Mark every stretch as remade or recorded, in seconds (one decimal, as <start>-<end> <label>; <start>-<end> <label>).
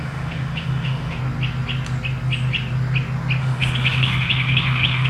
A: 0.0-1.2 remade; 1.2-3.4 recorded; 3.4-5.1 remade